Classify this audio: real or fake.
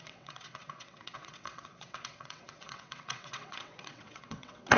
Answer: fake